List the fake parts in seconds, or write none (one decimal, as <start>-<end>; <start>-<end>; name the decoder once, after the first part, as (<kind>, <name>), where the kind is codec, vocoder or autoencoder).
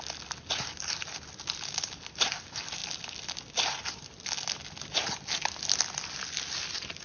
none